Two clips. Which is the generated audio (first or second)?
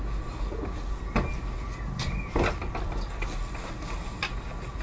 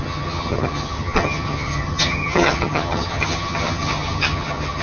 second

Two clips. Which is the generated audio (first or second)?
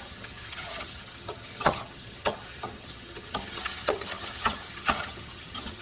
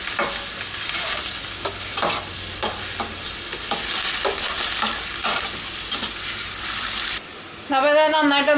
first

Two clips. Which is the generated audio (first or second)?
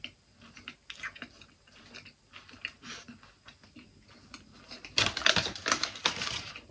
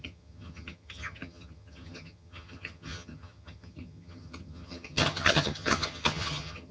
second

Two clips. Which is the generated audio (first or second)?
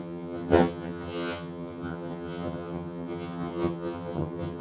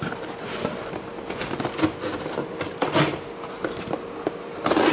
first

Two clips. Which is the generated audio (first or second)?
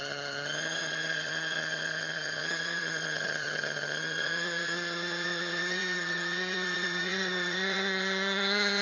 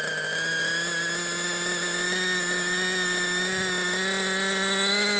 first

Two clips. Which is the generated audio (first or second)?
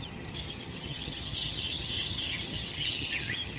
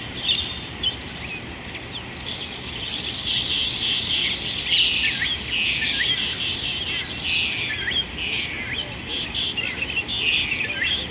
first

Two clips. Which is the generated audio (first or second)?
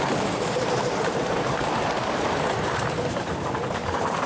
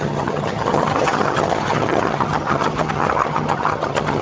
second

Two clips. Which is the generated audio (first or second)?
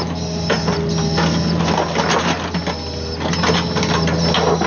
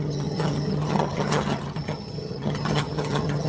second